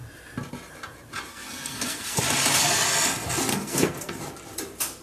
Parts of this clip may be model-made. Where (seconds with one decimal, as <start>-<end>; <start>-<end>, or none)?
1.3-2.2; 3.5-4.2